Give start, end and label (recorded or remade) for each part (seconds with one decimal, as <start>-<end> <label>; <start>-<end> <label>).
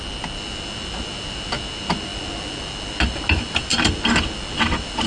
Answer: 0.0-5.1 recorded